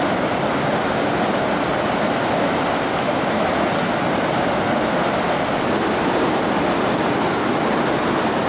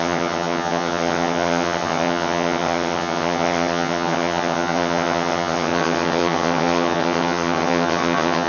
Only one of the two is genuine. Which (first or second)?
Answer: first